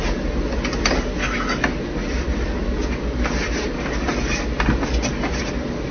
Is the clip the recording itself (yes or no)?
yes